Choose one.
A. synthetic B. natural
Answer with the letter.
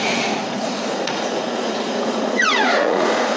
A